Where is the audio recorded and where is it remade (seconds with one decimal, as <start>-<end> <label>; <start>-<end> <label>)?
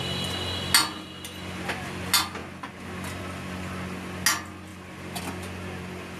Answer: 0.0-6.2 recorded